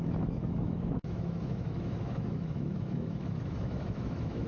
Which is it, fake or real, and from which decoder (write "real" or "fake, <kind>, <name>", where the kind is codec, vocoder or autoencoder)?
fake, autoencoder, DAC-VAE